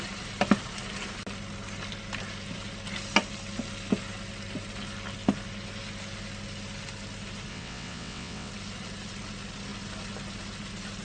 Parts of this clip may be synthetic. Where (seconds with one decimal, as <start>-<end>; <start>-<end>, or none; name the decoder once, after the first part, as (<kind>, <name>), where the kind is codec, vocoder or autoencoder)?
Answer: 7.5-8.5 (vocoder, WaveNeXt)